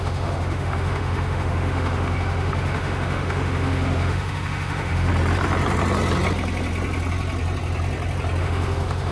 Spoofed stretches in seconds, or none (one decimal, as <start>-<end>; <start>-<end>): 0.0-5.1; 8.4-9.1